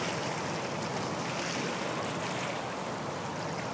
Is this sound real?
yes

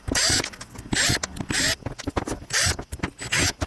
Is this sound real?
yes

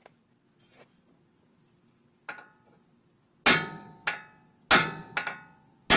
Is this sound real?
yes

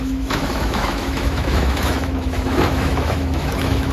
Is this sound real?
no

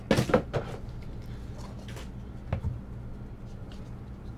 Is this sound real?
yes